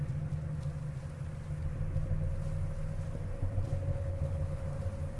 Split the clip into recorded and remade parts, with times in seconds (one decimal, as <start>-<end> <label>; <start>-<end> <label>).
0.0-3.9 recorded; 3.9-4.6 remade; 4.6-5.2 recorded

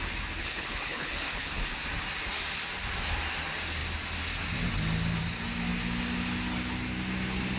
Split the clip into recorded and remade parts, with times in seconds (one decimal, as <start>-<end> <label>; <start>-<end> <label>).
0.0-0.4 recorded; 0.4-1.6 remade; 1.6-7.6 recorded

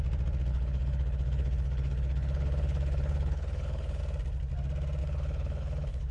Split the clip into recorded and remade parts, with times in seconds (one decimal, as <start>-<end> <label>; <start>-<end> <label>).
0.0-0.5 recorded; 0.5-4.0 remade; 4.0-5.0 recorded; 5.0-6.1 remade

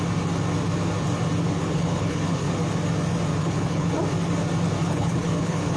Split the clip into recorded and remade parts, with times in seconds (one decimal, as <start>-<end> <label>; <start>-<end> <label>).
0.0-1.6 recorded; 1.6-2.5 remade; 2.5-3.4 recorded; 3.4-3.9 remade; 3.9-4.8 recorded; 4.8-5.8 remade

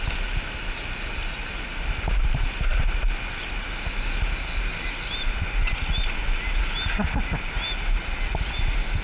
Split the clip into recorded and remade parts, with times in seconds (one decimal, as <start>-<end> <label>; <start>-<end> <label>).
0.0-9.0 recorded

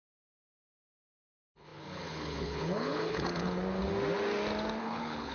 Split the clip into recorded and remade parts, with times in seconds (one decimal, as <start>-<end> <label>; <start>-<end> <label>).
0.0-3.6 remade; 3.6-4.8 recorded; 4.8-5.3 remade

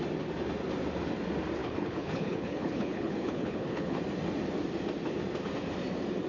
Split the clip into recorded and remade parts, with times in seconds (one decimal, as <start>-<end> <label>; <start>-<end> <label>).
0.0-1.6 recorded; 1.6-4.0 remade; 4.0-6.3 recorded

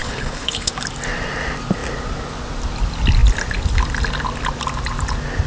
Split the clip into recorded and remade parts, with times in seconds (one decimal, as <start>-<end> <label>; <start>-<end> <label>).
0.0-0.7 remade; 0.7-5.5 recorded